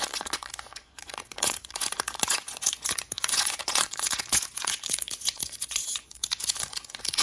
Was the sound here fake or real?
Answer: fake